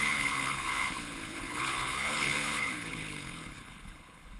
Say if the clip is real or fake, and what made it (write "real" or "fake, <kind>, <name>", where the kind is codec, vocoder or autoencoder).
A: fake, codec, HILCodec